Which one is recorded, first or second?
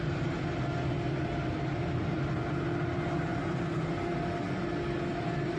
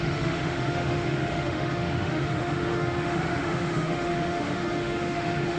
first